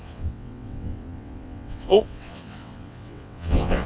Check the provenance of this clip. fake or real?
fake